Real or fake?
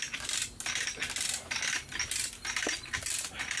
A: real